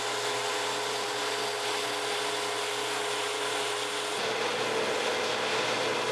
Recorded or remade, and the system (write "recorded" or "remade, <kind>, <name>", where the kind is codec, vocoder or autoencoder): recorded